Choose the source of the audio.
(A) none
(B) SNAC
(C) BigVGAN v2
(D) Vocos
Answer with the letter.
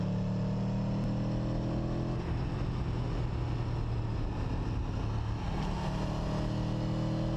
A